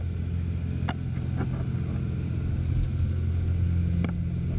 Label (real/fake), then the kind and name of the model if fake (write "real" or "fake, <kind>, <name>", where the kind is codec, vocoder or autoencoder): real